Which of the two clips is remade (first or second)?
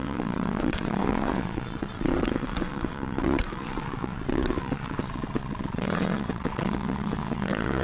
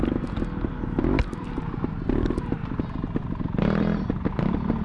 first